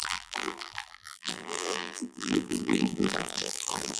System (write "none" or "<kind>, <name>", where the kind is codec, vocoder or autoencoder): vocoder, BigVGAN v2